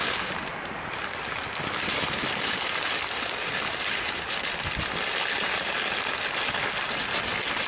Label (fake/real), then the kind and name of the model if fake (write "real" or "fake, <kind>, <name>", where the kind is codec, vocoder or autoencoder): real